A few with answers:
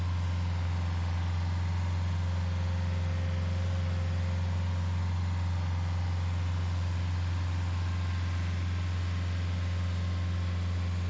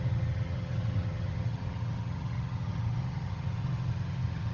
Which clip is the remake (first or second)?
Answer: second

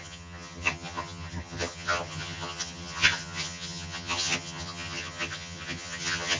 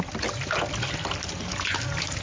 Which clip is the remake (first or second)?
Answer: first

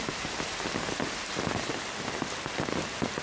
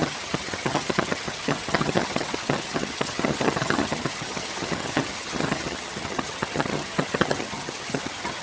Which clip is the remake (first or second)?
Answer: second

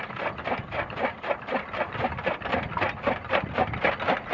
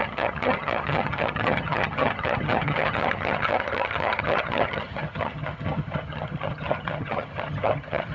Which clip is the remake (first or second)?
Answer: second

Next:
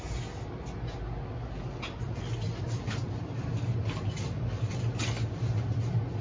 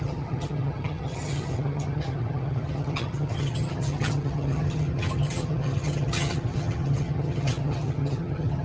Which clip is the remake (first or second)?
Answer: second